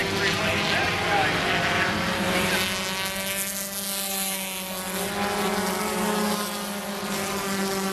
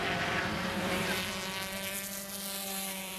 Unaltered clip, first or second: first